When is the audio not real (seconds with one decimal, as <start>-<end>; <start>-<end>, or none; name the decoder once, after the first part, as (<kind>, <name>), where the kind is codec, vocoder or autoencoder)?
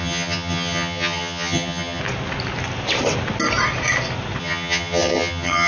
0.0-2.0 (vocoder, HiFi-GAN); 4.4-5.7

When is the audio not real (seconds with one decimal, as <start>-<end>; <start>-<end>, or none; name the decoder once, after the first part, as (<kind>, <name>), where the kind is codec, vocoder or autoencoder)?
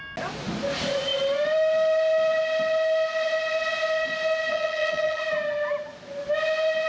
4.5-5.2 (vocoder, HiFi-GAN)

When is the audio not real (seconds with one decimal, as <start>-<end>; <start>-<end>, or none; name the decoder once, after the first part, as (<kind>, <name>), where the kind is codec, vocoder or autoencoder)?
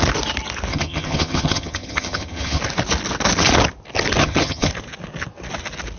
0.7-2.6 (vocoder, HiFi-GAN); 4.2-4.7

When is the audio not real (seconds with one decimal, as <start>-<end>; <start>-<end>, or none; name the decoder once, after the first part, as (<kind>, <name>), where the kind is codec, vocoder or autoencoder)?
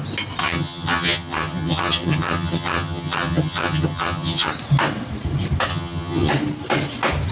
0.4-4.5 (vocoder, HiFi-GAN); 5.7-6.3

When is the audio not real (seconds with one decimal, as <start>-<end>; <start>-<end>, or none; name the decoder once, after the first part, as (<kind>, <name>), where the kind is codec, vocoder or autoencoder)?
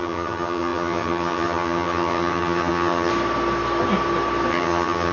0.0-3.1 (vocoder, HiFi-GAN); 4.5-5.1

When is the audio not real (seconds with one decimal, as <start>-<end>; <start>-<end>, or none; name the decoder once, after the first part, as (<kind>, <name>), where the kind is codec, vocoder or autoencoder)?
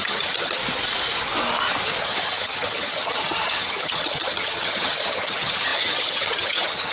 0.0-0.6 (vocoder, HiFi-GAN); 2.0-6.9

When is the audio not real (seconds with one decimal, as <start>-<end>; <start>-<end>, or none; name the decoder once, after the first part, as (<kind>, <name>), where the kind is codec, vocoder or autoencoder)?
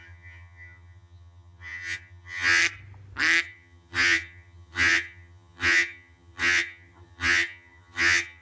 0.0-2.6 (vocoder, HiFi-GAN); 3.4-8.4